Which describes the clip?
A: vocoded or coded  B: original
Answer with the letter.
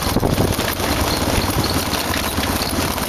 B